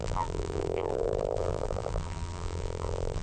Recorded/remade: remade